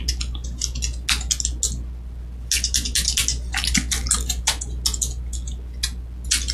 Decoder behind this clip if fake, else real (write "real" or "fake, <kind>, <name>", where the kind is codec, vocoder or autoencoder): real